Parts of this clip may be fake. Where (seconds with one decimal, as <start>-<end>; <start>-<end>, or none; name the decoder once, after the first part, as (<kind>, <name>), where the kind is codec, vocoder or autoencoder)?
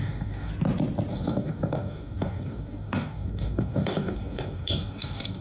0.0-0.5 (codec, DAC); 1.1-5.4